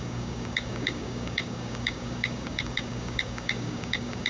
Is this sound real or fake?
fake